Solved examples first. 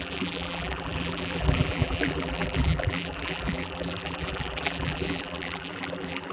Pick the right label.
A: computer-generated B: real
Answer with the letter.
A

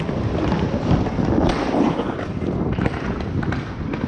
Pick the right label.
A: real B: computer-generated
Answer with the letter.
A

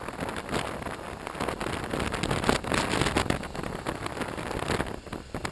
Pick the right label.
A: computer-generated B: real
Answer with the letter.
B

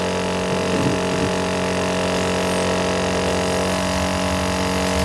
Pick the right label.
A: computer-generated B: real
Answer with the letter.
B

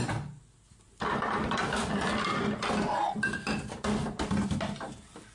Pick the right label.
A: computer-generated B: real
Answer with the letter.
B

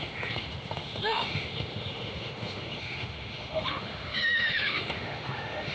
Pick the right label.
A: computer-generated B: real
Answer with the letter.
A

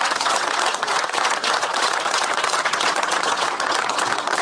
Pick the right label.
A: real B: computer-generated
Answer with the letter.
B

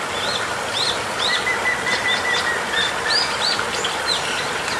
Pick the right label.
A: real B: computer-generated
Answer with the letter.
A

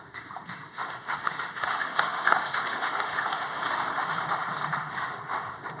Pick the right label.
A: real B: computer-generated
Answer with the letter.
B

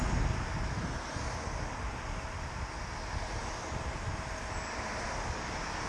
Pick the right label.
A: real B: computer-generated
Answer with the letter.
A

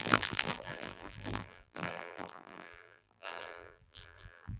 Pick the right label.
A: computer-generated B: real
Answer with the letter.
A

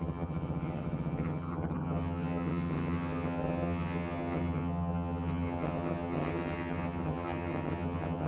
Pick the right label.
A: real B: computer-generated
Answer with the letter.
B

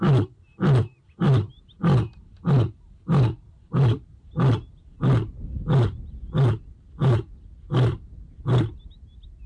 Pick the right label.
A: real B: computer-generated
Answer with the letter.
A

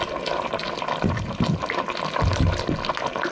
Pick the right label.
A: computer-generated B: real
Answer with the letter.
B